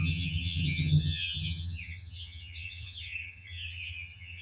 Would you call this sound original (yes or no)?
no